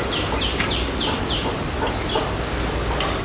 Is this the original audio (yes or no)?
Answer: yes